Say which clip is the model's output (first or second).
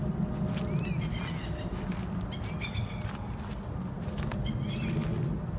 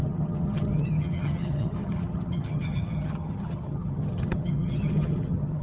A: second